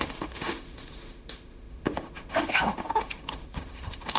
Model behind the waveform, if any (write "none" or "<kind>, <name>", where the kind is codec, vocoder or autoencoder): autoencoder, DAC-VAE